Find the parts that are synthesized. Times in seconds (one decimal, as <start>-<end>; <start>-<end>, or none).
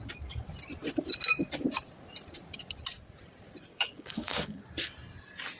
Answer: 3.7-4.6